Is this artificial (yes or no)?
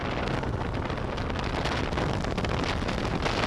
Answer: no